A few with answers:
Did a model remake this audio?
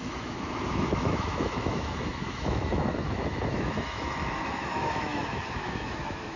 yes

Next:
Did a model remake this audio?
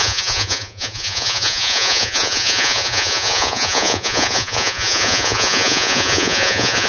yes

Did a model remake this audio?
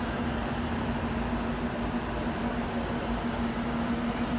no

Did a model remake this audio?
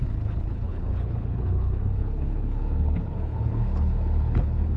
yes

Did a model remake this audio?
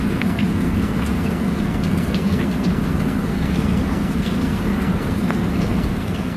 yes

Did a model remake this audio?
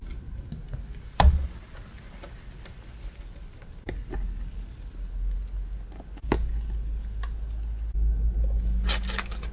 no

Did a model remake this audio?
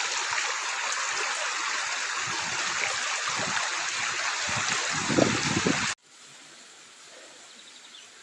no